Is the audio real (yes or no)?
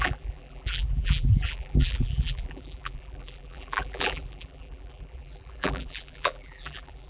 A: no